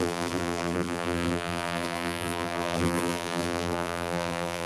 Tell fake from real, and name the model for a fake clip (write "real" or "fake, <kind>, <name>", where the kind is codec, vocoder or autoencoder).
fake, vocoder, BigVGAN v2